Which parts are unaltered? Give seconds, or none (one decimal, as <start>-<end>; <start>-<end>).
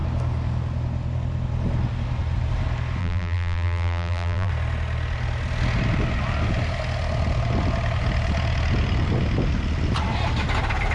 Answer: 0.0-3.0; 4.5-10.9